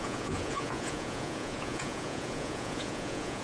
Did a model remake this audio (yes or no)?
yes